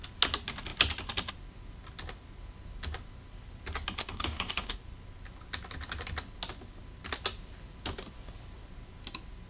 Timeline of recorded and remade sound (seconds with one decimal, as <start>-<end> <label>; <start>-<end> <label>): 0.0-4.0 recorded; 4.0-4.8 remade; 4.8-9.5 recorded